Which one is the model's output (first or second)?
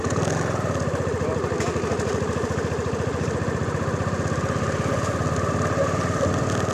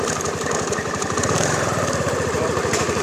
second